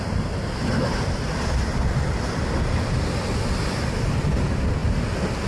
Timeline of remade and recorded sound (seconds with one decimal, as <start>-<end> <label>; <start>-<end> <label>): 0.0-5.5 recorded